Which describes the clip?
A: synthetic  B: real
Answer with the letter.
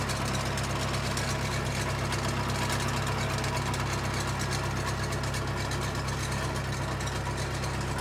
B